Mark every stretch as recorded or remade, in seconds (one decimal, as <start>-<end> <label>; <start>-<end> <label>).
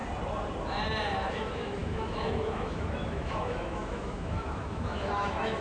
0.0-1.3 recorded; 1.3-5.6 remade